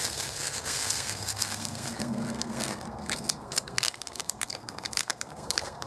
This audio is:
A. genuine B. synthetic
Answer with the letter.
B